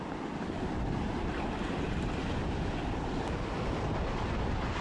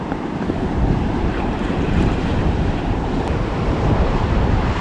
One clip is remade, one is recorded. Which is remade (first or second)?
second